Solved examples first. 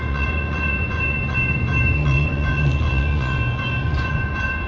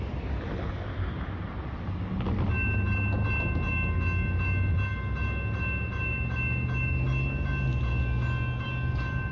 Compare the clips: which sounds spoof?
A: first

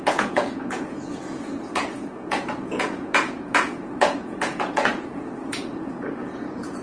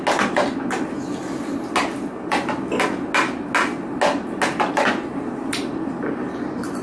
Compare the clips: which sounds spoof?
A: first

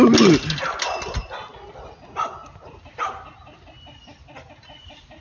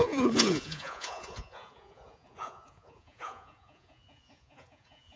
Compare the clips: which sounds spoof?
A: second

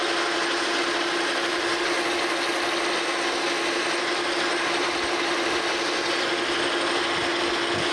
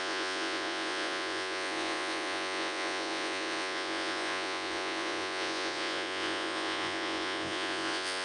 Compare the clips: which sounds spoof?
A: second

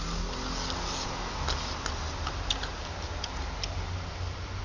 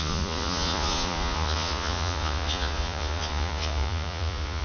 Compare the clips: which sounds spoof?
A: second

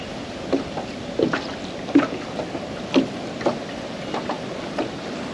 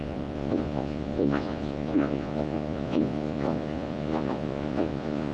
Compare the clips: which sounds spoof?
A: second